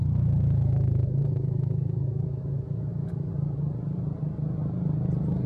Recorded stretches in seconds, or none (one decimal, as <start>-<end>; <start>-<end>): 3.3-5.5